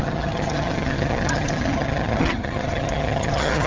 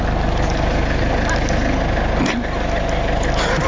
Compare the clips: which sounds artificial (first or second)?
first